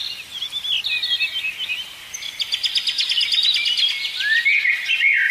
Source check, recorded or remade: recorded